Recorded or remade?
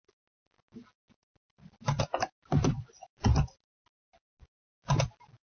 recorded